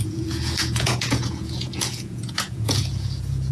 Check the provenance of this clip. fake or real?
fake